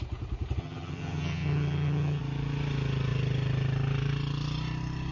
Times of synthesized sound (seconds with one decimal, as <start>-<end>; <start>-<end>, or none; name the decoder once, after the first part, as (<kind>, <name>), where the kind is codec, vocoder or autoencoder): 0.6-2.2 (vocoder, HiFi-GAN)